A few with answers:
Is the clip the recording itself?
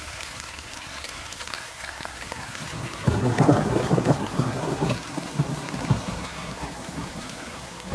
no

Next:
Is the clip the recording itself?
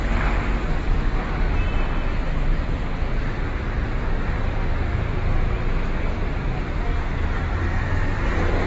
yes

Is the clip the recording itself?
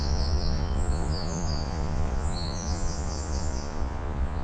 no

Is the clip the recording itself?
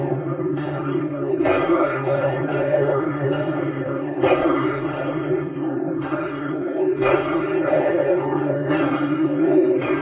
no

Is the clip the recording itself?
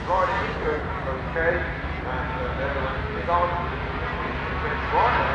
yes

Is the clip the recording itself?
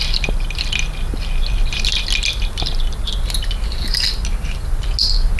yes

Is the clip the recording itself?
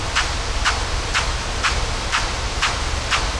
yes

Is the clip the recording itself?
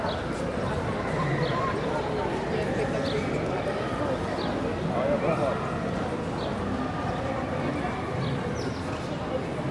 yes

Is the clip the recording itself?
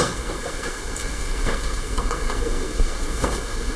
no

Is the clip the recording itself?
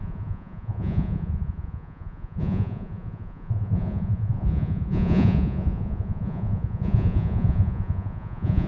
no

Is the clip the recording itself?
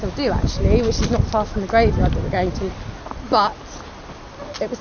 yes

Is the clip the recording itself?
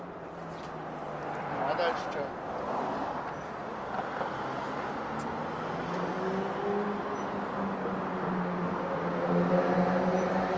yes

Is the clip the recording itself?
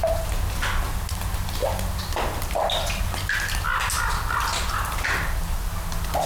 yes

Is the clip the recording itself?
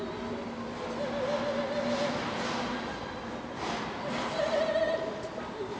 yes